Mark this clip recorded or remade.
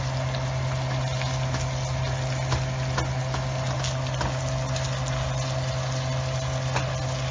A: recorded